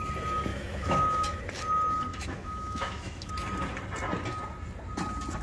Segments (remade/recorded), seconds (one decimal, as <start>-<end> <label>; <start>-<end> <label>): 0.0-0.5 recorded; 0.5-1.4 remade; 1.4-2.1 recorded; 2.1-3.3 remade; 3.3-5.4 recorded